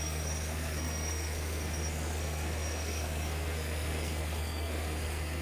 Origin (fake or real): fake